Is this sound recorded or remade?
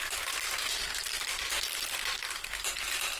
remade